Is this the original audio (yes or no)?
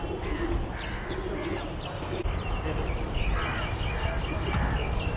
yes